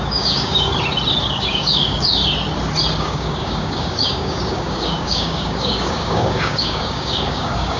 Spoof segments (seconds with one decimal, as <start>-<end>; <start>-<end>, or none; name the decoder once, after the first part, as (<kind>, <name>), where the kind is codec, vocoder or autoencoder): 0.0-0.7 (codec, DAC); 1.2-2.2; 3.0-7.8